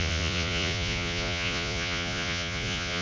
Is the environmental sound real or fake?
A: fake